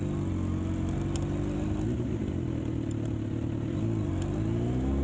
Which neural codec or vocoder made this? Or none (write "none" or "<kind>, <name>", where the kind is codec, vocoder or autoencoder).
none